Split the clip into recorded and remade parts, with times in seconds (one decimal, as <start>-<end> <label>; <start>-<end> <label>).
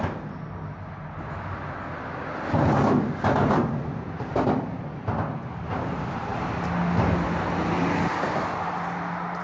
0.0-9.4 recorded